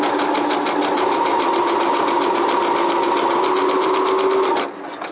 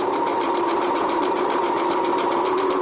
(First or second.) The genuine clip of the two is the first